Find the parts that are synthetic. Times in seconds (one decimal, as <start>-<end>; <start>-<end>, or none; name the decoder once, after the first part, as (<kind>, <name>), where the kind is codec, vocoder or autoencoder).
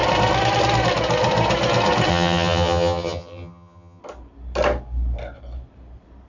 2.1-4.0 (vocoder, HiFi-GAN)